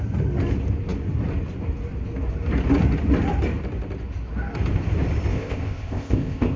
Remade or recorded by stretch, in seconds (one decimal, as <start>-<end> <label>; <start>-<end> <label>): 0.0-5.3 recorded; 5.3-6.6 remade